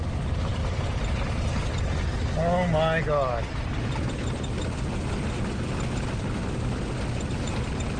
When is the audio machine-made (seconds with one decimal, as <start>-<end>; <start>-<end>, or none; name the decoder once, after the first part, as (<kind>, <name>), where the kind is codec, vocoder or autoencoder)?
none